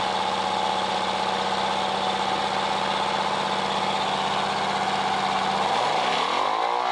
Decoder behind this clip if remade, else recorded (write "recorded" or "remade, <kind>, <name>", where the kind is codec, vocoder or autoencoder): recorded